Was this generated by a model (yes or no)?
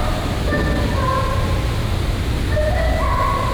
no